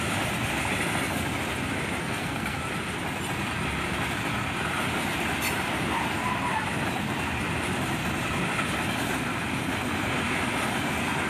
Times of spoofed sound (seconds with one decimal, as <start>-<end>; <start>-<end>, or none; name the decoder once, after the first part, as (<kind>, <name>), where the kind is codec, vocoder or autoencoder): 2.0-2.6 (codec, SNAC)